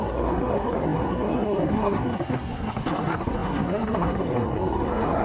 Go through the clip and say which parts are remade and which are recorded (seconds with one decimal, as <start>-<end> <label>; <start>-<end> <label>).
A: 0.0-5.2 remade